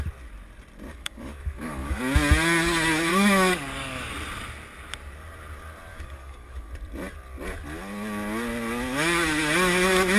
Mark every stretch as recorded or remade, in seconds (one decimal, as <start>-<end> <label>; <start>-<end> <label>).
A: 0.0-0.9 recorded; 0.9-2.0 remade; 2.0-3.1 recorded; 3.1-4.1 remade; 4.1-5.9 recorded; 5.9-6.7 remade; 6.7-10.2 recorded